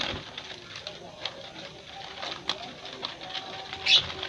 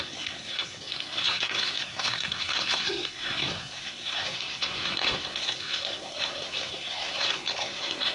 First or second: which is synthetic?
second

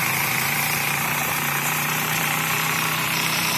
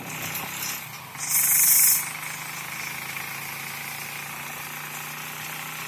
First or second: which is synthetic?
first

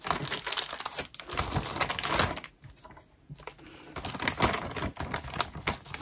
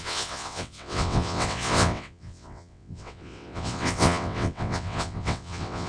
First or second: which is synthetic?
second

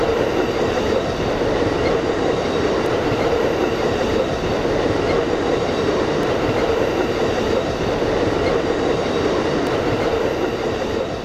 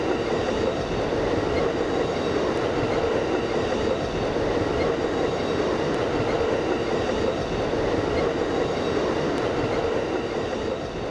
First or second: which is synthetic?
first